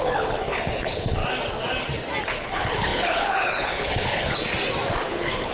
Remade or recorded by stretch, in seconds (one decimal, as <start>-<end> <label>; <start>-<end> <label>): 0.0-1.2 remade; 1.2-2.3 recorded; 2.3-4.5 remade; 4.5-5.1 recorded; 5.1-5.5 remade